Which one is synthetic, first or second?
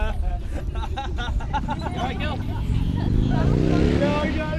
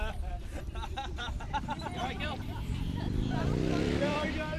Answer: second